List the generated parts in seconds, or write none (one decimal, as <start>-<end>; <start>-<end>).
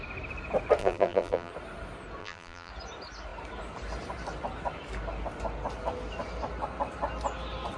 0.8-1.5; 2.2-2.7